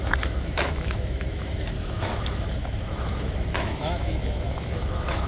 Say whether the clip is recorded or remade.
remade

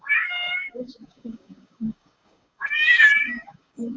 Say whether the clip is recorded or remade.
remade